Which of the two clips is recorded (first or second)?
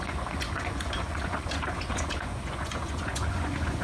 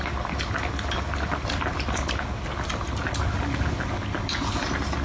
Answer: second